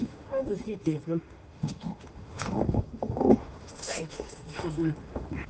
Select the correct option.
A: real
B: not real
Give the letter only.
B